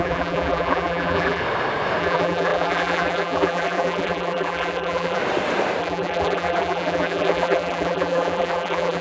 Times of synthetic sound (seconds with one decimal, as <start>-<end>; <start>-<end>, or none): 0.0-1.4; 2.0-5.2; 5.8-9.0